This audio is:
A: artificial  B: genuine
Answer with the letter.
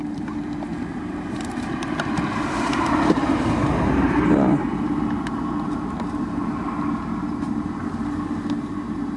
A